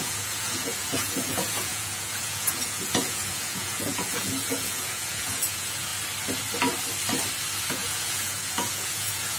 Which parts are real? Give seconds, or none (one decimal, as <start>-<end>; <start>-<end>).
5.9-7.7